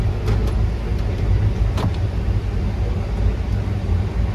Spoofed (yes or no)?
no